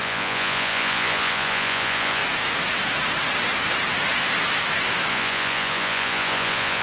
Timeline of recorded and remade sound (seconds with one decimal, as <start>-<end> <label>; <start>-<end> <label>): 0.0-2.2 remade; 2.2-5.1 recorded; 5.1-6.8 remade